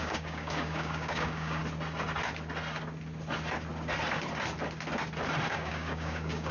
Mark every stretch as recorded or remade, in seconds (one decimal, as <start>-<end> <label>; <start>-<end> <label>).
0.0-1.6 remade; 1.6-5.5 recorded; 5.5-6.5 remade